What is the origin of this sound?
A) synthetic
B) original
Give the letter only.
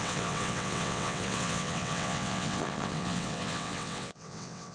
A